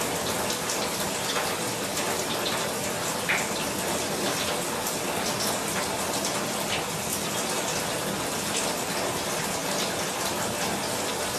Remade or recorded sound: recorded